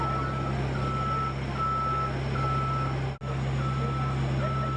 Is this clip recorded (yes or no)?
yes